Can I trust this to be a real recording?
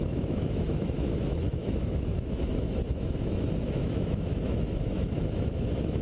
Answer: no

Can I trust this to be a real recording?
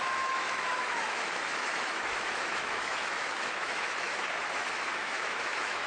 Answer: no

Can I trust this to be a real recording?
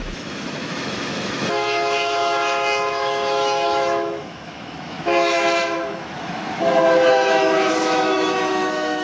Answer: no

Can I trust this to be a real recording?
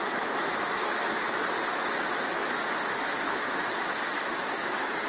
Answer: no